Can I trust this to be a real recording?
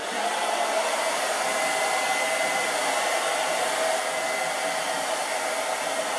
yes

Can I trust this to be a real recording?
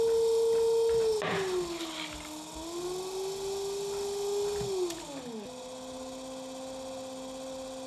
yes